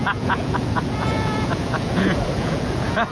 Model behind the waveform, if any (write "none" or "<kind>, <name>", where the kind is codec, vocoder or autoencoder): vocoder, Vocos